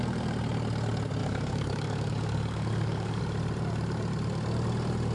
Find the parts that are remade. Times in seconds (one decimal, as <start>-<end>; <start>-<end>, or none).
1.2-3.2